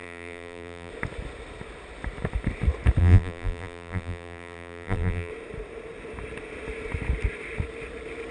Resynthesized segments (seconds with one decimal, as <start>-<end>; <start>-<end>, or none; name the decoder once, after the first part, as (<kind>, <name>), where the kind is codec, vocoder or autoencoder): 0.0-0.9 (vocoder, BigVGAN v2); 3.0-5.3

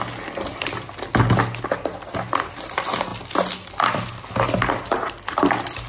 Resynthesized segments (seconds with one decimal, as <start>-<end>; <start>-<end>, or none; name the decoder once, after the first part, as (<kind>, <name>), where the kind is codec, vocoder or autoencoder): none

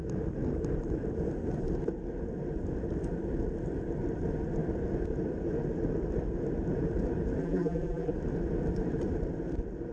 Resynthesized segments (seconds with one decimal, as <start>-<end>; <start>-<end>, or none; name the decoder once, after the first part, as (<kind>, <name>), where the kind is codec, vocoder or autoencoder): 7.4-8.1 (vocoder, BigVGAN v2)

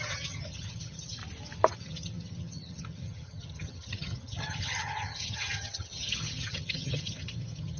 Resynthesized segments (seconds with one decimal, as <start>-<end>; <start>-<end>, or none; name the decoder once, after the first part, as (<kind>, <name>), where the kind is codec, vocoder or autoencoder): 0.0-1.2 (vocoder, HiFi-GAN); 1.7-7.8

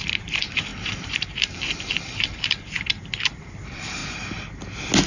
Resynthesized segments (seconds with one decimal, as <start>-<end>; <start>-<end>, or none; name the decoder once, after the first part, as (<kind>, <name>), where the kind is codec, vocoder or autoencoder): 0.0-4.0 (vocoder, BigVGAN v2)

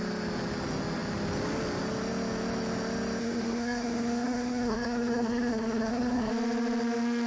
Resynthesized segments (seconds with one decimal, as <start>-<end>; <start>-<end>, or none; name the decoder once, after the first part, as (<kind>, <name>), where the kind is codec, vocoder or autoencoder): 3.2-6.3 (codec, SNAC)

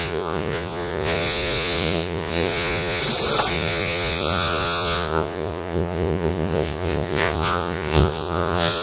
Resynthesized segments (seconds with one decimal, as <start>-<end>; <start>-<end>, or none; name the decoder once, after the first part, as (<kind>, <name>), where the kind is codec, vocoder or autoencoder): 0.0-3.0 (vocoder, Vocos); 3.5-8.8